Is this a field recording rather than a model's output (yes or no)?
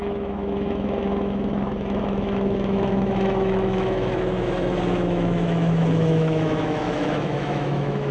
no